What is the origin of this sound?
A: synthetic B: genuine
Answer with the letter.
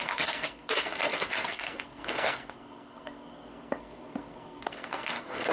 A